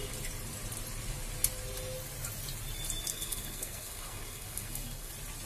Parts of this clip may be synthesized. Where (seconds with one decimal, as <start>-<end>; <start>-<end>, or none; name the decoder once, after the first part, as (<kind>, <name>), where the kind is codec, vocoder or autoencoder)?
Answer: 3.1-5.1 (codec, SNAC)